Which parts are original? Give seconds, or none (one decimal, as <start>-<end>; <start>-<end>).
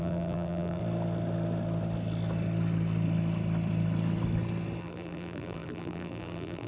0.8-4.8